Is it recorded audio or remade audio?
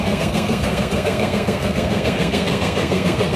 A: remade